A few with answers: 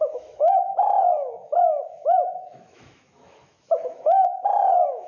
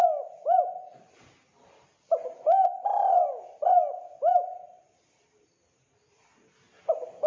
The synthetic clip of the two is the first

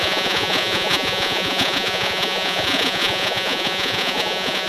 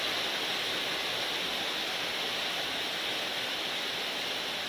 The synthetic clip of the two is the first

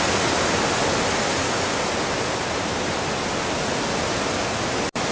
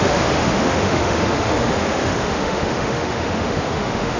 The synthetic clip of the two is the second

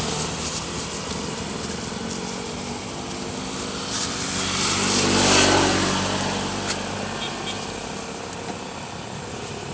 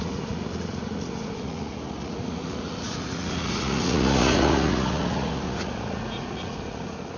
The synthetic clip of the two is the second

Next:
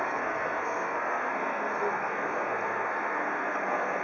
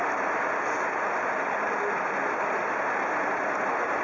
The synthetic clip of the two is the first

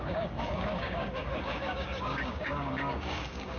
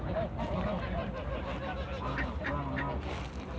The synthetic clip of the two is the first